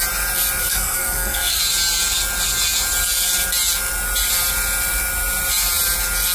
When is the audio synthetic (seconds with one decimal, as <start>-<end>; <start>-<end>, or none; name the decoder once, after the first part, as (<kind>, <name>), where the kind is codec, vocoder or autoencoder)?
0.6-1.6 (codec, SNAC)